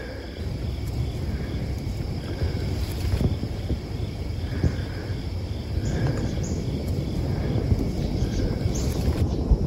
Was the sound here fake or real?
real